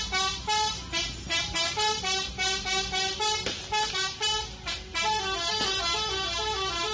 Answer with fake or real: real